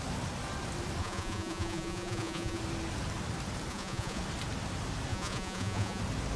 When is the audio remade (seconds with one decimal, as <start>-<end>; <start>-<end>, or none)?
1.0-2.6; 3.7-4.2; 5.1-6.0